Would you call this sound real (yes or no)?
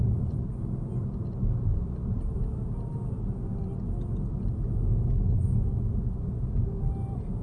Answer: yes